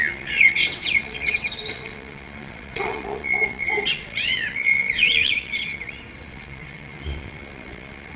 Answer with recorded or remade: remade